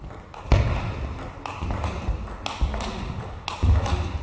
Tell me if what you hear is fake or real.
real